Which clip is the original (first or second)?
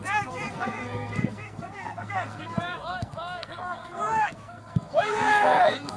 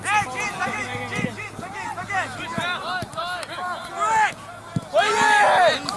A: second